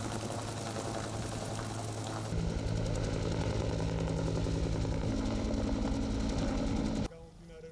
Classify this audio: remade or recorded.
recorded